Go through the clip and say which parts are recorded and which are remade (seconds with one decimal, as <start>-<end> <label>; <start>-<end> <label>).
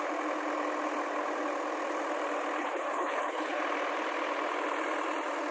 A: 0.0-2.6 recorded; 2.6-3.6 remade; 3.6-5.5 recorded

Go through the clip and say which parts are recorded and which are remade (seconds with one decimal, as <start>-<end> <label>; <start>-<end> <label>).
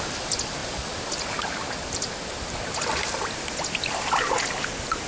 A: 0.0-5.1 recorded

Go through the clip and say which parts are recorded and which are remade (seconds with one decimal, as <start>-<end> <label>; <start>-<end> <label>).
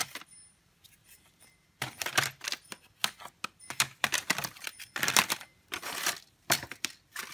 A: 0.0-3.0 remade; 3.0-3.6 recorded; 3.6-7.3 remade